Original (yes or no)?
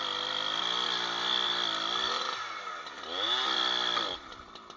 yes